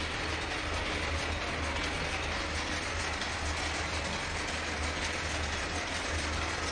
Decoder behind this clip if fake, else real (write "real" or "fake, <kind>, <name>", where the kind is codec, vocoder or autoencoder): real